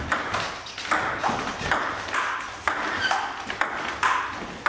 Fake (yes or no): no